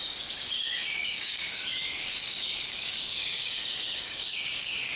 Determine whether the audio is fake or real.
fake